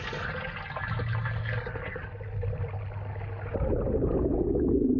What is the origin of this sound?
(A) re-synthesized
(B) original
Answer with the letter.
B